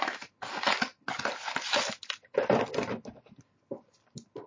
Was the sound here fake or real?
real